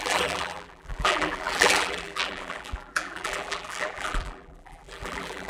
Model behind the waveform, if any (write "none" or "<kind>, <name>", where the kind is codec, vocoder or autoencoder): vocoder, BigVGAN v2